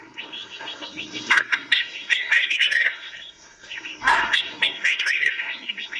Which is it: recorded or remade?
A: remade